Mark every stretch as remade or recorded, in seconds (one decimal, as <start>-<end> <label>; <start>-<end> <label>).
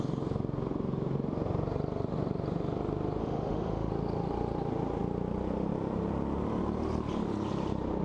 0.0-3.2 recorded; 3.2-3.9 remade; 3.9-8.0 recorded